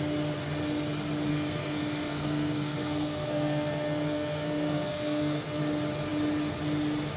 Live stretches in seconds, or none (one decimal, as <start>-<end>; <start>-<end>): 0.0-1.3; 5.6-7.2